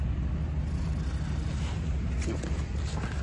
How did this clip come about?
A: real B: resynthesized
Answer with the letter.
A